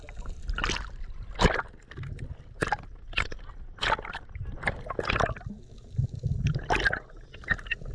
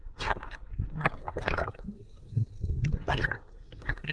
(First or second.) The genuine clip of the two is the first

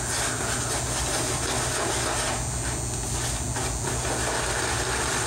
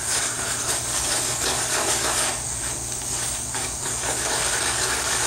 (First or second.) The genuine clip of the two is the first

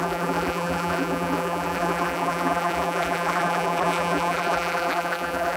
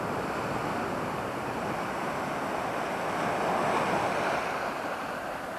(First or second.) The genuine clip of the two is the second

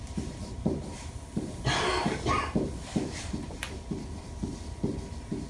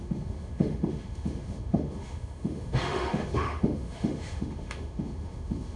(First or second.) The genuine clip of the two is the first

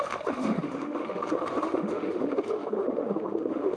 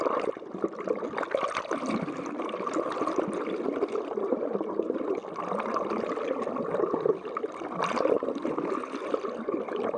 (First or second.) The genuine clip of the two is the second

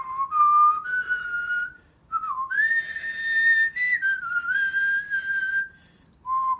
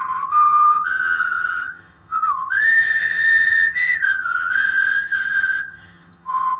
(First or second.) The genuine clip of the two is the first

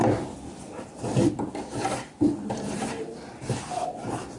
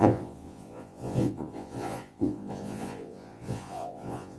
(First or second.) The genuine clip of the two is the first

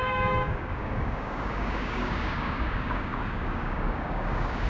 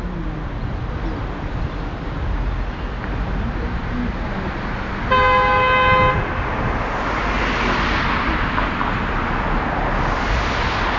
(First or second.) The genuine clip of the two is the second